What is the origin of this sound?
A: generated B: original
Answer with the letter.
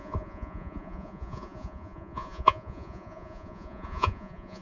A